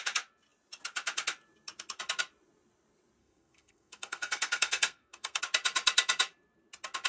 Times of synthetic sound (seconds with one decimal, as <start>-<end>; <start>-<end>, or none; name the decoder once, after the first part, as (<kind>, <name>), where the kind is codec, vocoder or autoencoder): 3.2-5.4 (codec, SNAC)